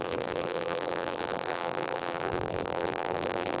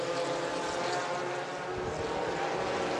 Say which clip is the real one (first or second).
second